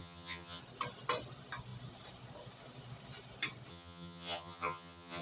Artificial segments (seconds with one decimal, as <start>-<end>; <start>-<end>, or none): 0.0-0.6; 3.7-5.2